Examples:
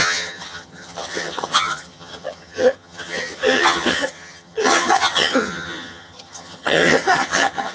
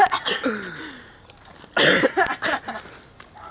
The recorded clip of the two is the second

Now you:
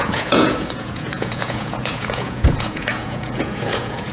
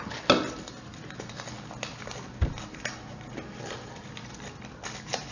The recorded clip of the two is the second